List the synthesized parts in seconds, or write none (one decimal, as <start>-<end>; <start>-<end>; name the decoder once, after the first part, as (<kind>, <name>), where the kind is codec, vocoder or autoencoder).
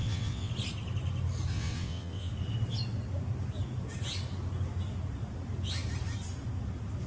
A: 0.0-0.5 (vocoder, WaveNeXt); 1.5-2.3